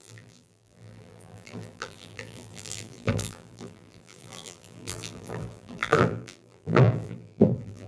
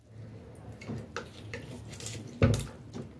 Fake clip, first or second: first